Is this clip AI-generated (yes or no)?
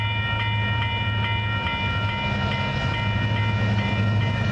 no